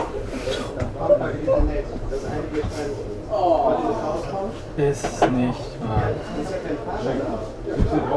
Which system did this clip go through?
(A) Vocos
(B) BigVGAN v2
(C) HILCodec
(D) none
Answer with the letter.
B